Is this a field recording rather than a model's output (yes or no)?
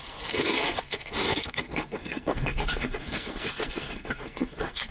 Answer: no